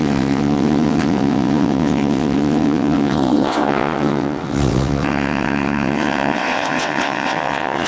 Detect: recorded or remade remade